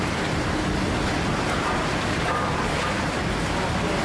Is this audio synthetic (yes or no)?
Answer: yes